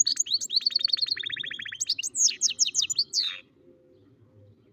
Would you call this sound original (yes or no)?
yes